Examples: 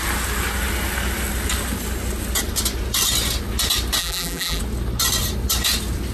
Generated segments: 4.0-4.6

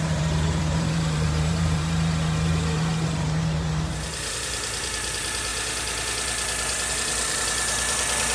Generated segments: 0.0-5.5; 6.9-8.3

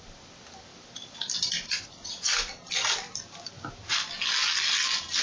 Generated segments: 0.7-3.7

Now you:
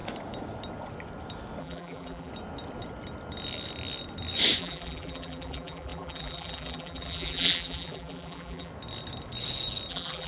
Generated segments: 1.6-2.3; 4.6-8.7; 9.9-10.3